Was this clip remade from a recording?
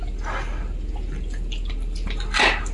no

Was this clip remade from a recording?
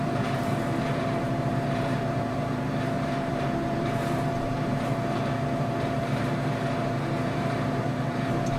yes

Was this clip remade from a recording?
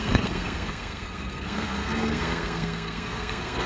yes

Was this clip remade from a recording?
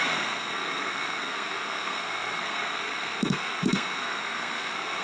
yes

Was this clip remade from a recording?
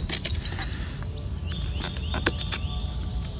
no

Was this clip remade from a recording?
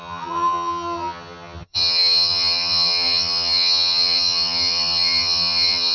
yes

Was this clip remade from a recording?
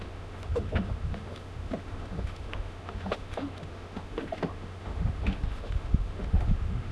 yes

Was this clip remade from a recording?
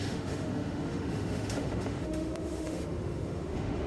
yes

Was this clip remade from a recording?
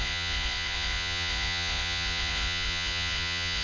yes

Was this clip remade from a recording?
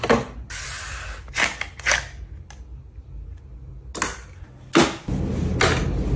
no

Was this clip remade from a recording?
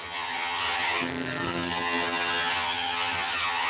yes